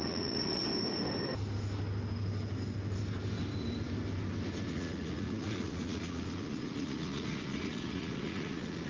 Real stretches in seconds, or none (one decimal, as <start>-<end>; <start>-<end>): 0.6-4.7